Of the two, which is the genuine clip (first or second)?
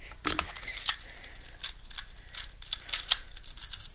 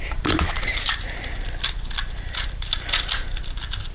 first